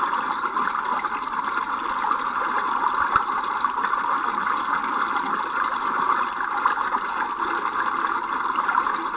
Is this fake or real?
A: real